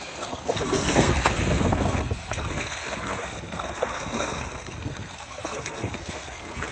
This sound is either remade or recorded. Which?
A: remade